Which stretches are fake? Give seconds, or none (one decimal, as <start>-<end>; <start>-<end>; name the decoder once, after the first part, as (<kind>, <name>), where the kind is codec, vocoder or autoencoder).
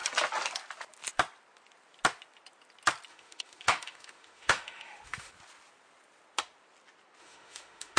3.1-5.3 (autoencoder, DAC-VAE); 7.2-8.0